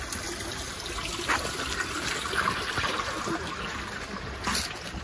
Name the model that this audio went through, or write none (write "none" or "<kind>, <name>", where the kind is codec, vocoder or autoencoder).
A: none